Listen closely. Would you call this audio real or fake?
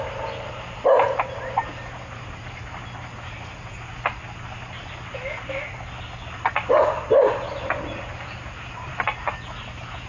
real